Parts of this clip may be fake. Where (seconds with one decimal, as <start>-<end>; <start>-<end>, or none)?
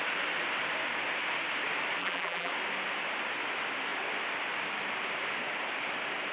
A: 2.0-2.5